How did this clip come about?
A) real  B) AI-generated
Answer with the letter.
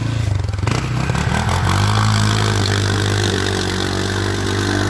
A